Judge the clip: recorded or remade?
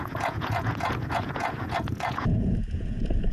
remade